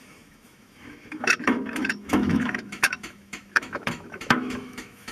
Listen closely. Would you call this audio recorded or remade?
remade